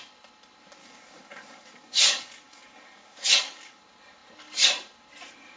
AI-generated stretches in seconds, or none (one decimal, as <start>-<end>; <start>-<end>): 0.8-3.8